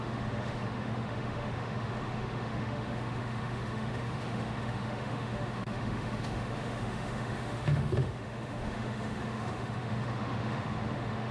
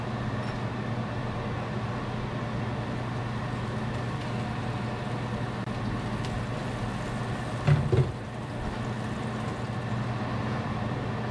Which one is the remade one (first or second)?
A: first